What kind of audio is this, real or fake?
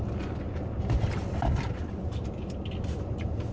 real